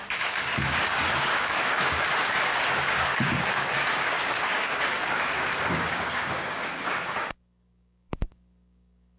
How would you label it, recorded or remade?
remade